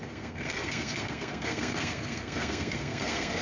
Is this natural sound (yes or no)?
no